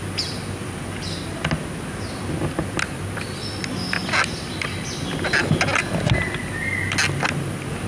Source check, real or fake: real